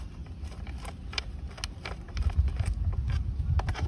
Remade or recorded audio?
recorded